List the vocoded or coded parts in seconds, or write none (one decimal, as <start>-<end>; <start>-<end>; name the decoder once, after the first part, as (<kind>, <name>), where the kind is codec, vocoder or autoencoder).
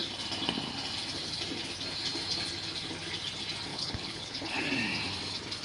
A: 3.7-4.6 (codec, HILCodec)